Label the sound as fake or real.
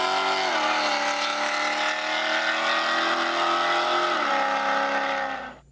real